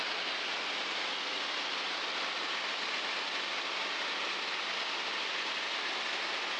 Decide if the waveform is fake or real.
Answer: real